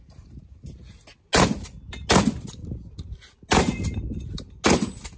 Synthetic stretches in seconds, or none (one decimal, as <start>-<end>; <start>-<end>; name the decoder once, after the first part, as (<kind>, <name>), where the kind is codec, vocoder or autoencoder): none